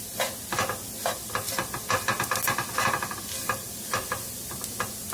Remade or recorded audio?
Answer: recorded